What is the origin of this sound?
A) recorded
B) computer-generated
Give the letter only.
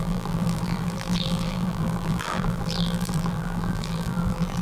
B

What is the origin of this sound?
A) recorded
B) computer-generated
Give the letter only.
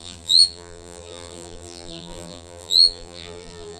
B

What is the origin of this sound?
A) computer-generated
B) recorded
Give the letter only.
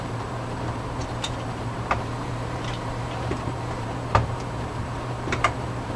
A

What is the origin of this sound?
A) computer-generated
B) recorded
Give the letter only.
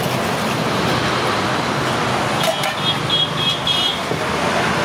B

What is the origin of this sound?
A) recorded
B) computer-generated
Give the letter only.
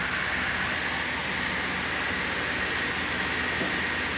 A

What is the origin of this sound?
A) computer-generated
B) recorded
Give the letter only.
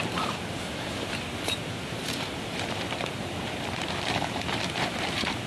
A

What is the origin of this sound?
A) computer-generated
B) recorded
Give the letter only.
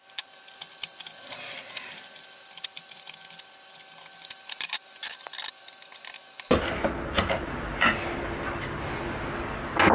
B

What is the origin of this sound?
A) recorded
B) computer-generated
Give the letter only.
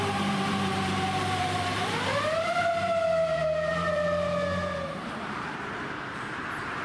B